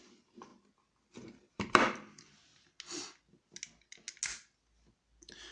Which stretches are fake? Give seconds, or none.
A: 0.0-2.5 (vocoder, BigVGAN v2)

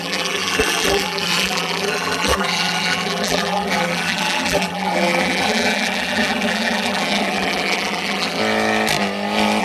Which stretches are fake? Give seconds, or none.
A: 0.0-8.4 (vocoder, BigVGAN v2)

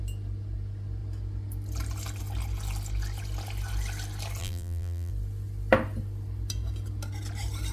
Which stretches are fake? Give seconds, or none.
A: 4.4-5.1 (vocoder, BigVGAN v2)